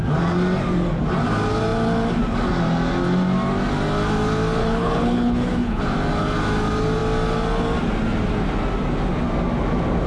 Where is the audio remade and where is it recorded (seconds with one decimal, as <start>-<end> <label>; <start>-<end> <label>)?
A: 0.0-4.6 recorded; 4.6-5.8 remade; 5.8-10.1 recorded

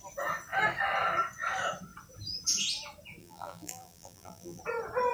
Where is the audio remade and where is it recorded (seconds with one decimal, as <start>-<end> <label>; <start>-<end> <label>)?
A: 0.0-3.2 recorded; 3.2-4.6 remade; 4.6-5.1 recorded